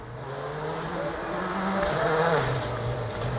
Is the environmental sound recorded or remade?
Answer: recorded